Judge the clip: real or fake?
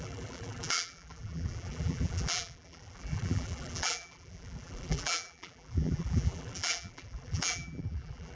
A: fake